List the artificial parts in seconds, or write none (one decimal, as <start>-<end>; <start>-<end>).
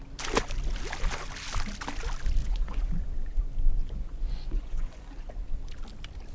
2.4-2.9; 3.8-5.3